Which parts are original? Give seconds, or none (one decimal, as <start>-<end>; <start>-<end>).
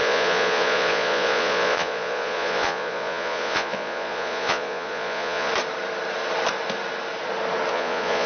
5.5-7.7